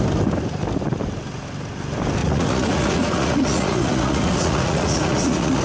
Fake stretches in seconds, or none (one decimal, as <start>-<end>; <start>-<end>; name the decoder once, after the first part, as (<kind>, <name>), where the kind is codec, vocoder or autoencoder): 2.2-5.6 (vocoder, Vocos)